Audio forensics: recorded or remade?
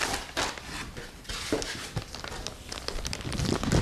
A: recorded